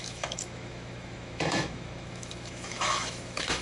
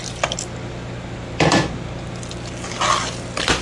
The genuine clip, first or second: second